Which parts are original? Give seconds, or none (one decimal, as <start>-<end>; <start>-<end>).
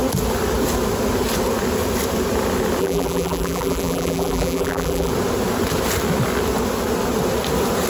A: 0.0-2.8; 5.1-7.9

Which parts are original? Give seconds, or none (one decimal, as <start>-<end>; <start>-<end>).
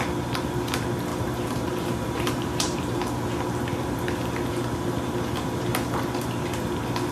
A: 0.0-1.1; 3.0-7.1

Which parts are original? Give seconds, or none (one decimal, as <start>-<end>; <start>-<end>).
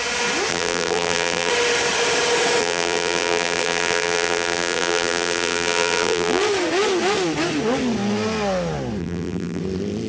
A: 0.0-0.5; 1.5-2.6; 6.4-9.0; 9.6-10.1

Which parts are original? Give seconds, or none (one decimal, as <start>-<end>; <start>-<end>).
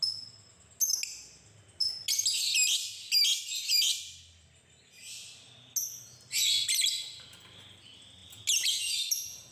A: 0.0-9.5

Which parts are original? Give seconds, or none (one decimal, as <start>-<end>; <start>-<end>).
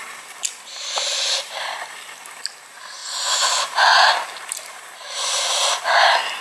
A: 0.0-1.1; 1.7-6.4